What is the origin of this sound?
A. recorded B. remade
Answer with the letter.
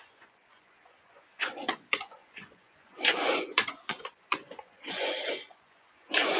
B